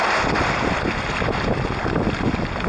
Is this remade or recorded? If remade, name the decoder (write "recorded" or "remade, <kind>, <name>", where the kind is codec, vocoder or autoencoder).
recorded